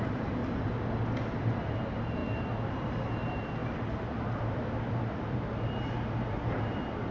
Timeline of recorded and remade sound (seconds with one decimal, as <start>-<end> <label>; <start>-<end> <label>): 0.0-0.4 remade; 0.4-1.4 recorded; 1.4-2.2 remade; 2.2-2.7 recorded; 2.7-3.6 remade; 3.6-4.2 recorded; 4.2-7.1 remade

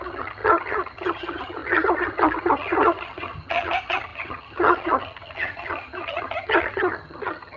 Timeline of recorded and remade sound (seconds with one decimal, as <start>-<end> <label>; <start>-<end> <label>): 0.0-7.6 remade

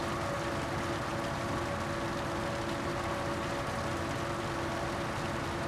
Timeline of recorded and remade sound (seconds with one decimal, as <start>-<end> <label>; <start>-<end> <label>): 0.0-5.7 recorded

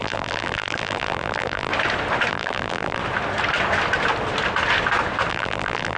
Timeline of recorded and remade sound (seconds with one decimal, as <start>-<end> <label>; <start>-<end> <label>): 0.0-1.7 remade; 1.7-2.3 recorded; 2.3-3.0 remade; 3.0-5.3 recorded; 5.3-6.0 remade

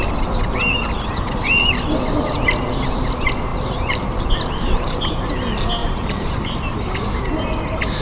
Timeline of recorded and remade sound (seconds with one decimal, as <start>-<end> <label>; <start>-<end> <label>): 0.0-3.5 recorded; 3.5-5.3 remade; 5.3-5.8 recorded; 5.8-6.8 remade; 6.8-8.0 recorded

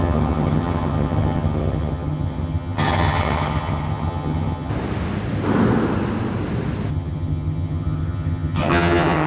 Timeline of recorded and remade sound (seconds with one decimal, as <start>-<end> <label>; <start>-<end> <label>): 0.0-4.7 remade; 4.7-6.9 recorded; 6.9-9.3 remade

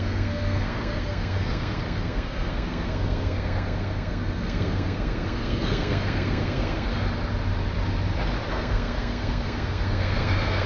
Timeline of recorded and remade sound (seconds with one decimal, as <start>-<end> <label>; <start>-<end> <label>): 0.0-6.9 remade; 6.9-8.5 recorded; 8.5-10.7 remade

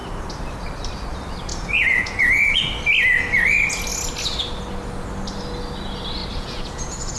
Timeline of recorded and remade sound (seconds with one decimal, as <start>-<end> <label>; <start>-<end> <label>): 0.0-1.5 recorded; 1.5-2.6 remade; 2.6-6.2 recorded; 6.2-7.2 remade